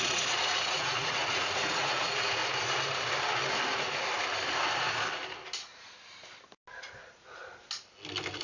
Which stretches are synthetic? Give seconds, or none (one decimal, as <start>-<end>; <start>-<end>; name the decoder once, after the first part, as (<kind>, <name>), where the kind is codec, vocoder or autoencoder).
0.0-2.4 (vocoder, Vocos); 6.7-7.4